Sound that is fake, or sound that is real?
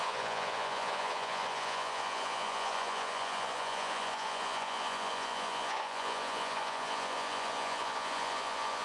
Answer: fake